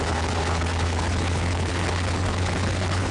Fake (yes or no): yes